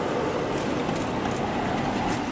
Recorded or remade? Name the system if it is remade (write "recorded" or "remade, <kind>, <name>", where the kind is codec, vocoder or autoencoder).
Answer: recorded